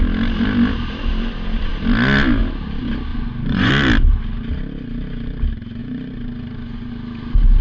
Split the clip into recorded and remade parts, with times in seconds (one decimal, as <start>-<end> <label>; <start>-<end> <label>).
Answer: 0.0-3.1 recorded; 3.1-3.7 remade; 3.7-5.8 recorded; 5.8-6.9 remade; 6.9-7.6 recorded